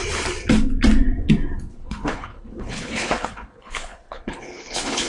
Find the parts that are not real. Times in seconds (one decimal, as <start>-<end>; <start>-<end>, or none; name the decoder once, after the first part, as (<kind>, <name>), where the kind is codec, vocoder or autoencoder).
1.7-5.1 (codec, HILCodec)